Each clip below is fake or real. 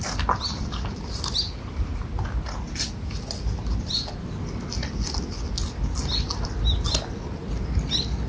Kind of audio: real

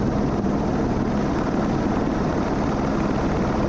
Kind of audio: real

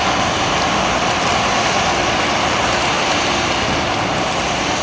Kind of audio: real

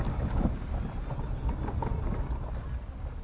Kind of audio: real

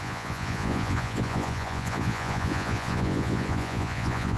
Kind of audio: fake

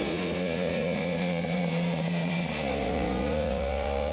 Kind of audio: fake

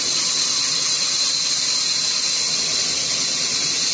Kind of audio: real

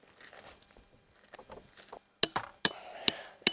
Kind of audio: real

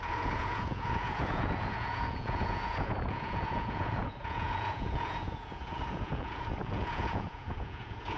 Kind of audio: fake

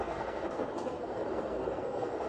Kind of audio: fake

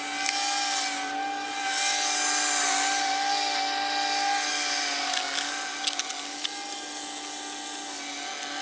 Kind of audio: real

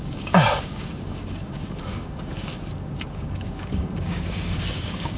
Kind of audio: fake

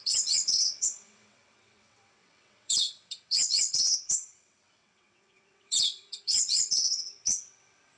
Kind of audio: fake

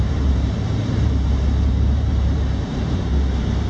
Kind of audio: fake